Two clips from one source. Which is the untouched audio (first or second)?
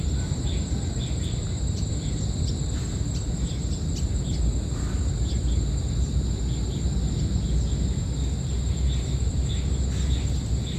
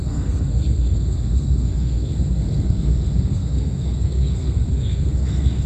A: first